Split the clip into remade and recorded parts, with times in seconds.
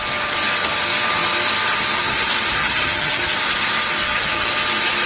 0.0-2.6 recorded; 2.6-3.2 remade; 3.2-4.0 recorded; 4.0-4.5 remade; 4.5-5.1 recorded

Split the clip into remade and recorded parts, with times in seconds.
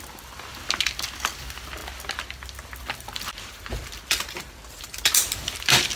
0.0-6.0 recorded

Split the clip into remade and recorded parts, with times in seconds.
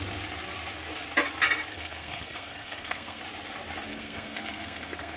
0.0-1.7 recorded; 1.7-3.2 remade; 3.2-3.9 recorded; 3.9-5.2 remade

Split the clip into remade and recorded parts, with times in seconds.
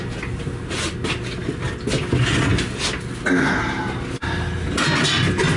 0.0-5.6 recorded